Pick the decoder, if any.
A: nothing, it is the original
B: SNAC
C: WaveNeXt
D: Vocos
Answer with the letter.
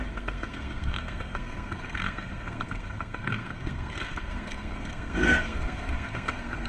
B